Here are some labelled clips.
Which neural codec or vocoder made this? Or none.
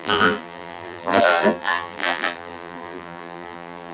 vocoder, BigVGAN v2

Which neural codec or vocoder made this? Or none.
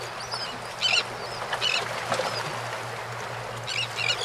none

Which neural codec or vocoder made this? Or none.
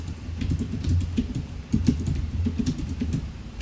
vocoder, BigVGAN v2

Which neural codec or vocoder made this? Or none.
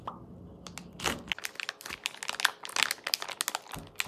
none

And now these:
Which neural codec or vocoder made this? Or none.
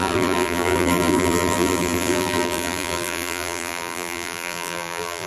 vocoder, BigVGAN v2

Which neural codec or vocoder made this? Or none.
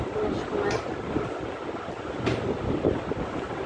none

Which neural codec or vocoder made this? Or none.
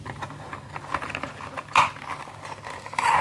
none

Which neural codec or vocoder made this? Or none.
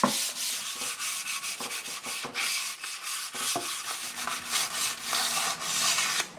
none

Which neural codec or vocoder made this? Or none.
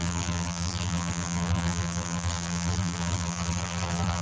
vocoder, BigVGAN v2